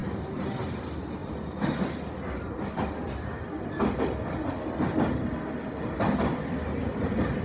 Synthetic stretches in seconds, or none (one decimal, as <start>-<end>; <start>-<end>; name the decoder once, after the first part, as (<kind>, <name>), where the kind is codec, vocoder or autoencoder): none